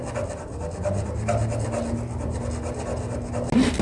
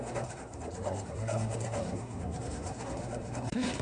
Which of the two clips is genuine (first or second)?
first